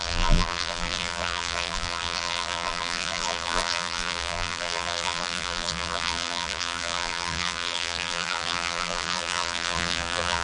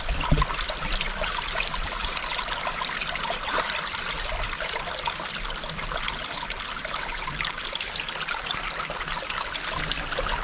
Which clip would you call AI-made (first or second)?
first